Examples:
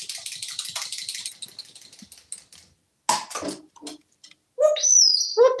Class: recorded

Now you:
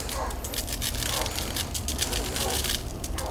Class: remade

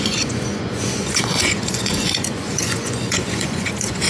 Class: remade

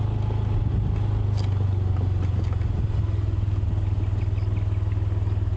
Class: recorded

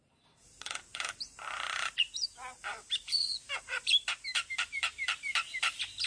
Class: remade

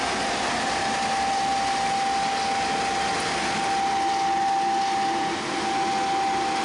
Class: recorded